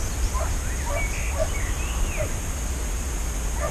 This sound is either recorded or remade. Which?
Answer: recorded